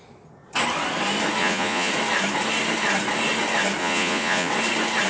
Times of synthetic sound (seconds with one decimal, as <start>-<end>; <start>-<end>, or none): 1.4-1.9; 3.8-4.5